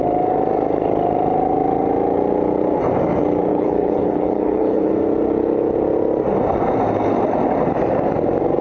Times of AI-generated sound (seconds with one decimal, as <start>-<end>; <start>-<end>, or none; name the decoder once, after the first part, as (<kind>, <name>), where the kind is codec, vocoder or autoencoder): 3.5-4.9 (codec, HILCodec)